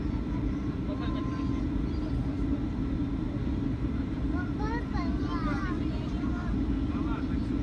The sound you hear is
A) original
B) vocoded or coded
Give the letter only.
B